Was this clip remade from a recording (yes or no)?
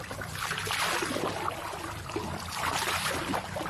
no